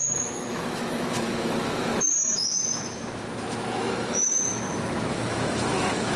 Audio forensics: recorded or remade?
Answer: remade